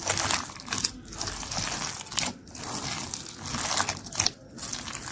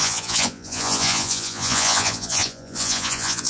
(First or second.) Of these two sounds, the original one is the first